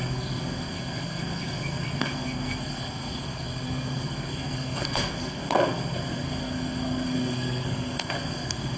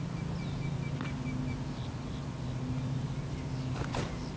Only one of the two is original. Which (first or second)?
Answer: second